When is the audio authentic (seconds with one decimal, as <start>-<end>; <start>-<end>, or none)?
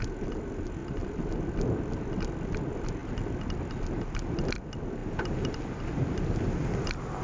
0.0-0.8; 1.4-7.2